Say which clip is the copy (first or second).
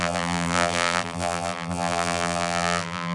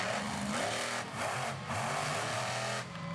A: first